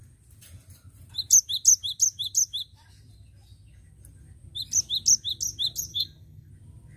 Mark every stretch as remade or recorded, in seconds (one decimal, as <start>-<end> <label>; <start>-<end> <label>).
0.0-5.9 recorded; 5.9-6.5 remade; 6.5-7.0 recorded